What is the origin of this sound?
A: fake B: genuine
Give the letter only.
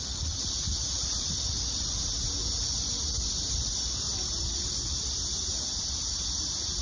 B